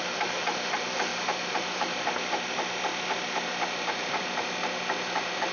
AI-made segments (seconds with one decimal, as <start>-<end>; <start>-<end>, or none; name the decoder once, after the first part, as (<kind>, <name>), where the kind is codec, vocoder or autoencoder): none